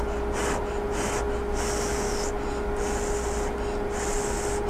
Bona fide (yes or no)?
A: yes